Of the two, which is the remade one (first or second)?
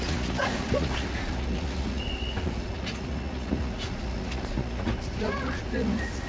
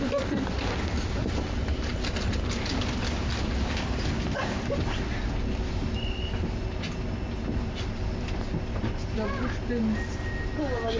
first